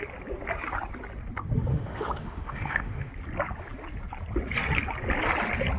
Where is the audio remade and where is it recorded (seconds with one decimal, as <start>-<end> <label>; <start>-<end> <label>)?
0.0-1.7 recorded; 1.7-3.1 remade; 3.1-5.8 recorded

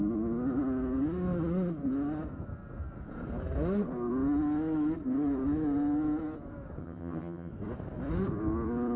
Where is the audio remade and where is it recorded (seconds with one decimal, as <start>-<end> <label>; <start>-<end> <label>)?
0.0-6.8 recorded; 6.8-7.5 remade; 7.5-9.0 recorded

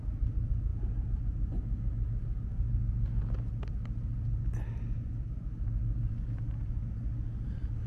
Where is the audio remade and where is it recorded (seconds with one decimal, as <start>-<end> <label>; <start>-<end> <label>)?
0.0-7.9 recorded